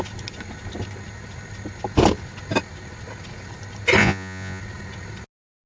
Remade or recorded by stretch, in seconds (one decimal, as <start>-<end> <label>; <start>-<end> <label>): 0.0-4.0 recorded; 4.0-4.6 remade; 4.6-5.7 recorded